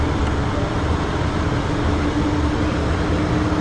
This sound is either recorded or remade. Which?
recorded